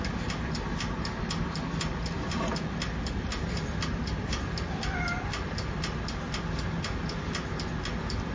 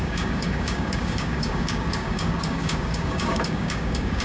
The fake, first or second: second